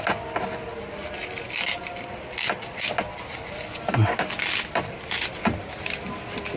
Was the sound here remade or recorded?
recorded